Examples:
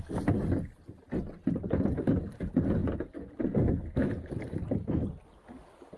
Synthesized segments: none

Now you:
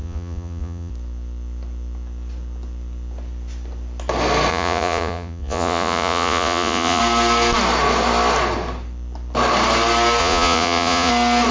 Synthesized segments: 0.0-0.9 (vocoder, Vocos); 4.5-7.0; 10.2-11.1